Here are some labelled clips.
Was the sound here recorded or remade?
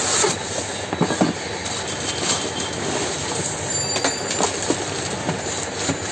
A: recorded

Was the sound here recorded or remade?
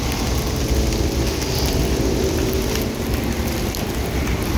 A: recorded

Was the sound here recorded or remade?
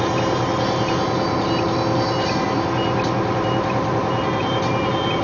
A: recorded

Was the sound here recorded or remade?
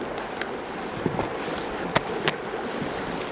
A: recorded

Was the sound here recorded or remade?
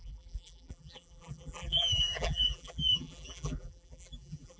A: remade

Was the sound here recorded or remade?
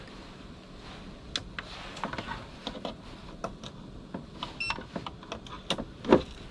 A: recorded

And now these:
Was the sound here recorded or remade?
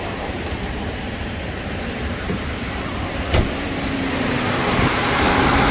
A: remade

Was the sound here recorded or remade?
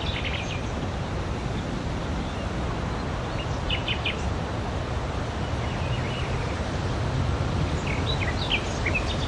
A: recorded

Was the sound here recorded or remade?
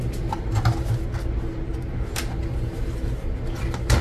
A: recorded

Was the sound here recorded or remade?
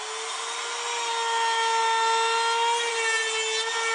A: recorded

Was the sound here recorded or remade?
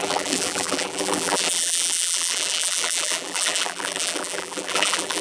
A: remade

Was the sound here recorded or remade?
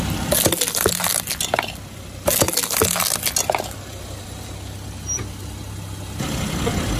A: recorded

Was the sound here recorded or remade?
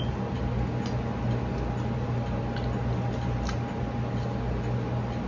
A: recorded